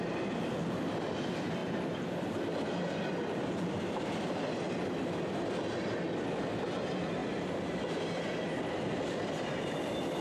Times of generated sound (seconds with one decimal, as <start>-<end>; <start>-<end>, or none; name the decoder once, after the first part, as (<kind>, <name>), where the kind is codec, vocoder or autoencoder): 0.0-0.6 (vocoder, BigVGAN v2); 1.1-7.2; 8.7-10.2